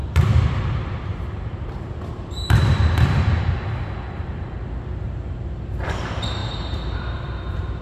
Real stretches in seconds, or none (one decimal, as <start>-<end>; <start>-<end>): 3.5-6.4